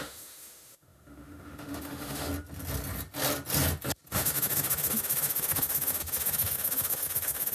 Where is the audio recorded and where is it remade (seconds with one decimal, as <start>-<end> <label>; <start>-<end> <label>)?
0.0-2.3 remade; 2.3-4.1 recorded; 4.1-7.5 remade